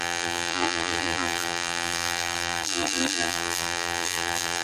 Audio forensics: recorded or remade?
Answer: remade